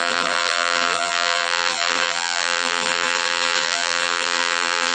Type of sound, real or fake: fake